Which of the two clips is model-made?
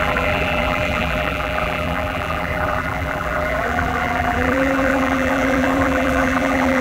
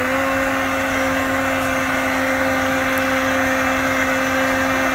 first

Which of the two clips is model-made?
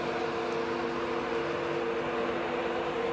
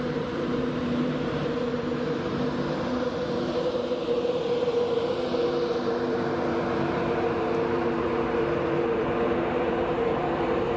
second